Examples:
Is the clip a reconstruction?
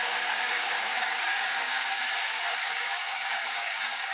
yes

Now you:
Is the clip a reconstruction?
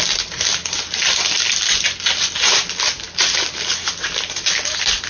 no